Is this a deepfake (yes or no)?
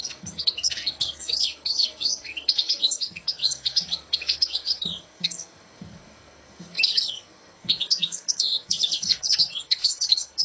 yes